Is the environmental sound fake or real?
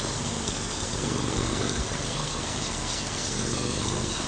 fake